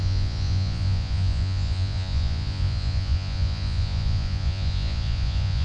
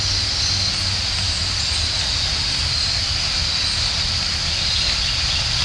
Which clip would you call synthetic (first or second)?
first